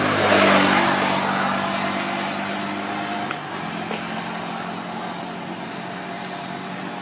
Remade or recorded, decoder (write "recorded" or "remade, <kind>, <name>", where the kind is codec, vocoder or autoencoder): recorded